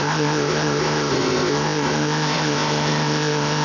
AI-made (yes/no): yes